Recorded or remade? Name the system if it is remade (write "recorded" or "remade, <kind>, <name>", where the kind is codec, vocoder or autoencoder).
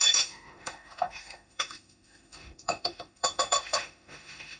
remade, autoencoder, DAC-VAE